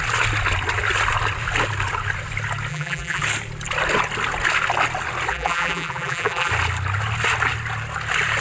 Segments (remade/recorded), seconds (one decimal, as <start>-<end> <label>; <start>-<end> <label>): 0.0-2.7 recorded; 2.7-3.2 remade; 3.2-5.3 recorded; 5.3-6.5 remade; 6.5-8.4 recorded